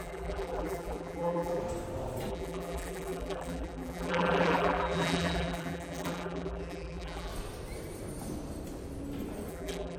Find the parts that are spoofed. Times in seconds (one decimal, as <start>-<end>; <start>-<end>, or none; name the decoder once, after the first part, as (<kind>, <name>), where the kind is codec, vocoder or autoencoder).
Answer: 0.0-1.6 (vocoder, BigVGAN v2); 2.3-7.3; 9.5-10.0